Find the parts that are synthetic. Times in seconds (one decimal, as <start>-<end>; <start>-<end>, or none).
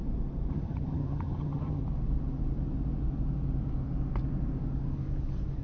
0.5-1.8